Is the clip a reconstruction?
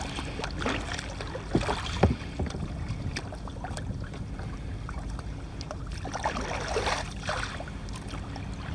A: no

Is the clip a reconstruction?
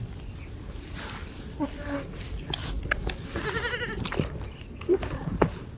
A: no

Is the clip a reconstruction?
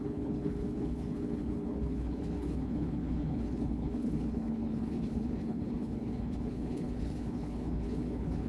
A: yes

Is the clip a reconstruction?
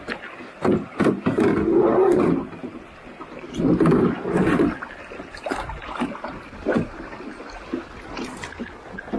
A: no